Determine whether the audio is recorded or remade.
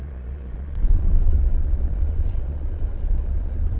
remade